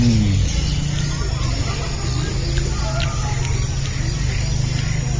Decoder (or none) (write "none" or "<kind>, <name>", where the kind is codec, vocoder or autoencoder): none